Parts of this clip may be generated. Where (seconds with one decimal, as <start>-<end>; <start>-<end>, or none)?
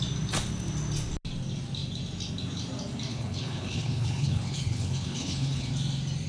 3.1-5.7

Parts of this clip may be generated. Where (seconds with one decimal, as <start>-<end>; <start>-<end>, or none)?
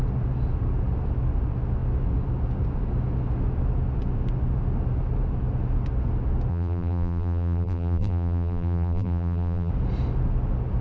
6.5-9.7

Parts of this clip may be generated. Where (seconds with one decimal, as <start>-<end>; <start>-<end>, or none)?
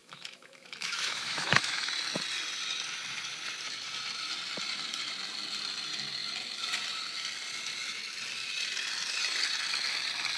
0.0-1.9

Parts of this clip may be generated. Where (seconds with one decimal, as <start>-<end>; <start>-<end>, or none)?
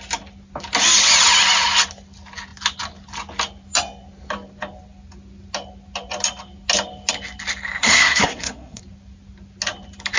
7.8-8.8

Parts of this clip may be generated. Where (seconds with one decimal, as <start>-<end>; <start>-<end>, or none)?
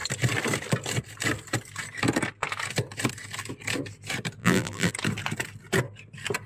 4.4-4.9